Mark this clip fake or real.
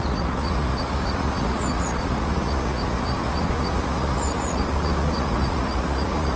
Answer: fake